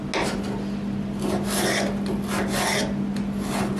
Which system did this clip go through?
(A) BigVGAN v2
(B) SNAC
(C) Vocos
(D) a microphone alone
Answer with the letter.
D